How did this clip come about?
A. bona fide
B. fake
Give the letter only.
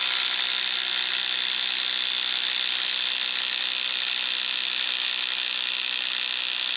A